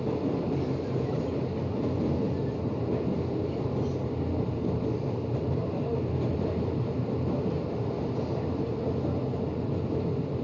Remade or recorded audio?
recorded